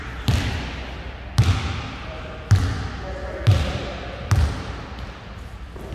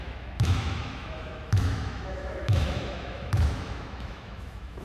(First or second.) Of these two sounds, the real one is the first